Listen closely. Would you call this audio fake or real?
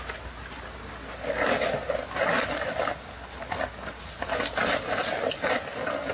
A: real